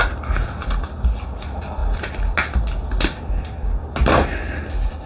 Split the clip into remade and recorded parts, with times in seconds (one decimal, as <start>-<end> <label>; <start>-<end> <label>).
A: 0.0-5.1 recorded